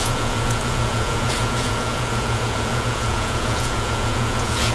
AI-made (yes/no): yes